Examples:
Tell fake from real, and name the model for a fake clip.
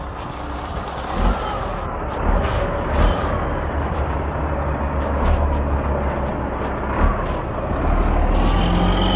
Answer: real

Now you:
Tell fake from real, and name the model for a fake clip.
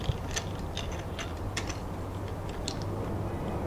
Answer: real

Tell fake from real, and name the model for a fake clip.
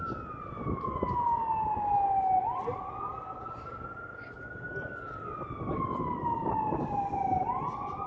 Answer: real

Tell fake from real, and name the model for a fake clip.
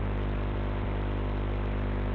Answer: real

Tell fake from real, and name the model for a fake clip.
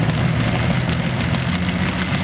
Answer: real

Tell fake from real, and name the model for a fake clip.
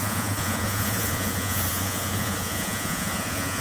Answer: fake, vocoder, Vocos